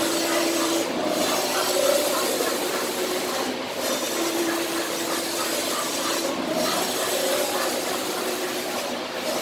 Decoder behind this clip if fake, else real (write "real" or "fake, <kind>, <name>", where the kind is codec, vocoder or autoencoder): fake, vocoder, BigVGAN v2